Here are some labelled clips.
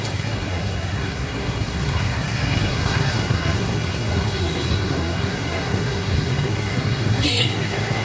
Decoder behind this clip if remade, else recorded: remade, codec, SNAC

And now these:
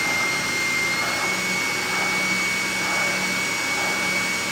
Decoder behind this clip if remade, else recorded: recorded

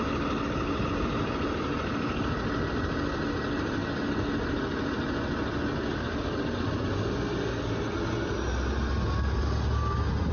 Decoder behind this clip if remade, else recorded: recorded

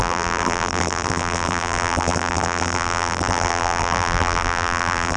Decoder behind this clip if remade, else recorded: remade, vocoder, BigVGAN v2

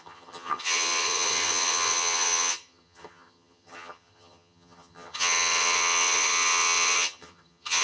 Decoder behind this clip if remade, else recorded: remade, vocoder, HiFi-GAN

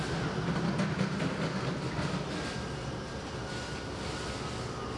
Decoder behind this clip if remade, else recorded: recorded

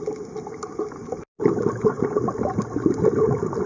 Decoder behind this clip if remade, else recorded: remade, vocoder, BigVGAN v2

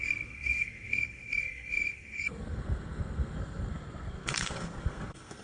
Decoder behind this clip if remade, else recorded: remade, codec, SNAC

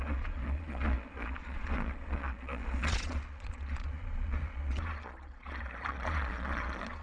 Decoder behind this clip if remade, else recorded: remade, vocoder, Vocos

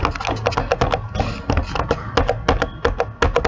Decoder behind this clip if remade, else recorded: recorded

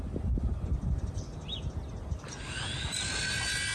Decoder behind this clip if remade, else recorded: recorded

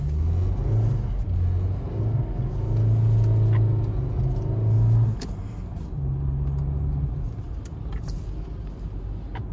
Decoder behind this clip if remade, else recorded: recorded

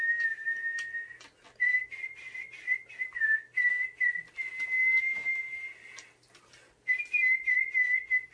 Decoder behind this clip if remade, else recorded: recorded